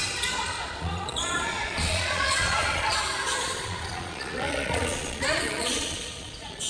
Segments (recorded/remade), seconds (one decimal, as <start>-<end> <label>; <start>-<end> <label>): 0.0-0.6 recorded; 0.6-6.7 remade